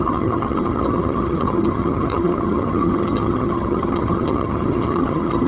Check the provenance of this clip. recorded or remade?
remade